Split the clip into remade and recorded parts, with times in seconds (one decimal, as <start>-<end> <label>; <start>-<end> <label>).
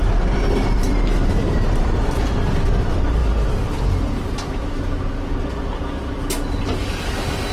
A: 0.0-2.2 remade; 2.2-7.5 recorded